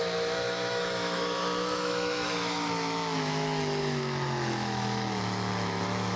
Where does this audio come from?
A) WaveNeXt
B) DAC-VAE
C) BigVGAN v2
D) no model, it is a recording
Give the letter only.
B